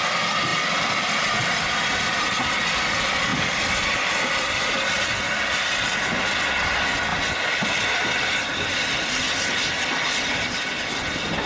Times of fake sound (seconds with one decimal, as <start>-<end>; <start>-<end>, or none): 0.5-2.2; 7.1-9.1